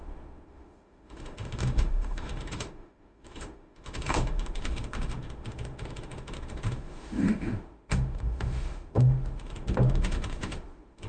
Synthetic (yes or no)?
yes